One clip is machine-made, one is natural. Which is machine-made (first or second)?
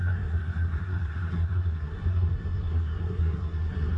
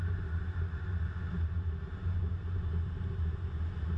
first